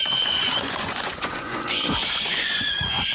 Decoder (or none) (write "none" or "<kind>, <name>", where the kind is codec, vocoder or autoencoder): vocoder, Vocos